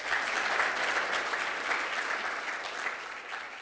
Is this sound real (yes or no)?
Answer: yes